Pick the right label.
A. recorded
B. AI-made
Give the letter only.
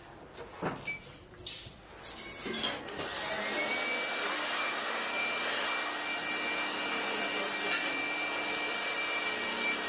A